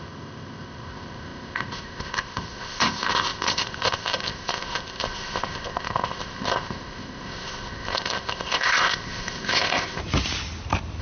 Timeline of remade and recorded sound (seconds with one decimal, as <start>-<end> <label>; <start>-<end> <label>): 0.0-10.0 remade; 10.0-11.0 recorded